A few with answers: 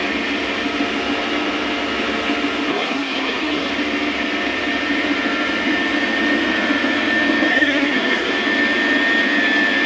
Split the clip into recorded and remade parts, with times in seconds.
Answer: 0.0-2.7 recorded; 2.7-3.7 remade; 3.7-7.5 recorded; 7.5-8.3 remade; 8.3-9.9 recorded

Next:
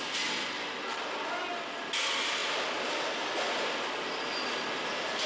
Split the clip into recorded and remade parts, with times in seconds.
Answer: 0.0-5.3 recorded

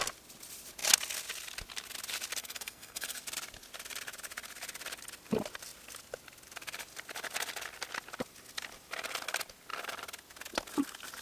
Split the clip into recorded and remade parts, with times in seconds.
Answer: 0.0-2.4 recorded; 2.4-3.2 remade; 3.2-11.2 recorded

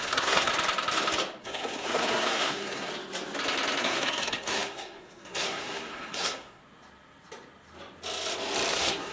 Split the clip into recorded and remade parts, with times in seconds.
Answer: 0.0-0.5 remade; 0.5-1.4 recorded; 1.4-2.9 remade; 2.9-3.8 recorded; 3.8-6.6 remade; 6.6-8.7 recorded; 8.7-9.1 remade

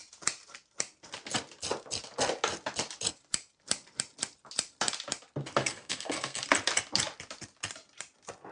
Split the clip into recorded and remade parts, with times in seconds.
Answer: 0.0-5.6 recorded; 5.6-6.4 remade; 6.4-8.5 recorded

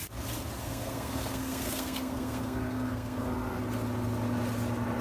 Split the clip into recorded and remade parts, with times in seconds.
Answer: 0.0-0.6 recorded; 0.6-3.6 remade; 3.6-5.0 recorded

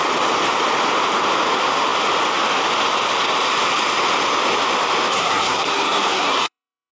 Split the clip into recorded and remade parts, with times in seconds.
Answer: 0.0-5.1 recorded; 5.1-6.9 remade